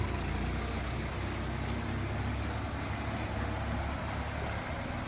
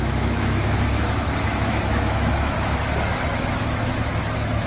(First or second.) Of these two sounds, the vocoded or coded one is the second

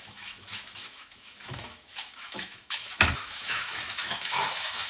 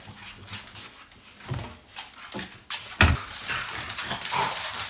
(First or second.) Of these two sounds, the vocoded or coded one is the first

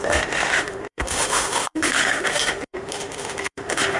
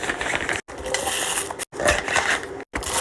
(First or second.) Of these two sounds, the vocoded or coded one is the first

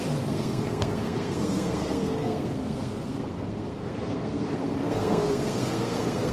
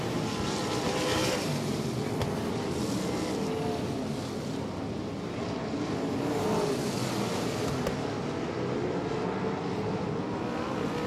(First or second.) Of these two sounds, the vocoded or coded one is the first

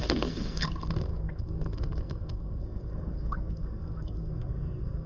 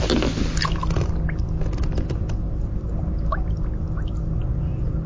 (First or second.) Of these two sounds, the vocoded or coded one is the first